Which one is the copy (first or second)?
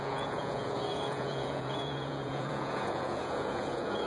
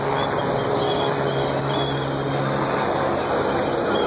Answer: first